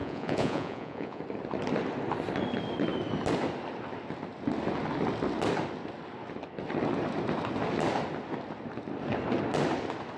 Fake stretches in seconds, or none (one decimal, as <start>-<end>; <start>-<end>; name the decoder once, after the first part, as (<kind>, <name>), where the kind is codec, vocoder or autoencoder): 0.0-1.2 (vocoder, Vocos)